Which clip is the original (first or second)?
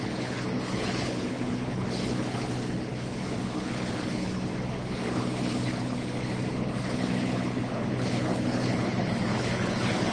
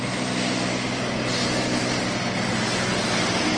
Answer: second